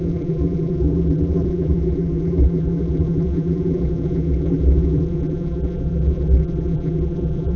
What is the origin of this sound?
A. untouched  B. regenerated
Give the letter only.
B